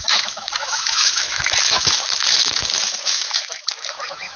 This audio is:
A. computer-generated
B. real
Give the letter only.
A